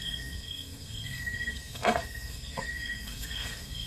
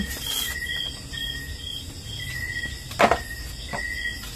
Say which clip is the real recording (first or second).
second